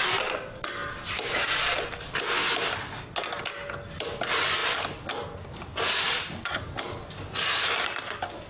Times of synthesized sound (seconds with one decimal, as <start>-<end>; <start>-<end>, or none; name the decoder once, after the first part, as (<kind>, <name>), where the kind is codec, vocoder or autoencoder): none